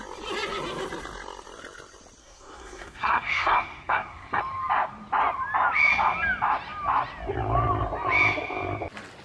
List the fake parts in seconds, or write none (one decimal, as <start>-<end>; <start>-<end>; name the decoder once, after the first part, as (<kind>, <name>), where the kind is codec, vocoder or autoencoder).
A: 2.2-4.4 (codec, SNAC)